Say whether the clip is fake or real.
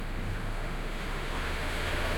fake